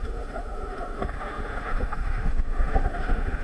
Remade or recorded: remade